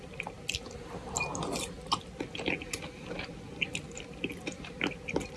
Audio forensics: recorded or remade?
recorded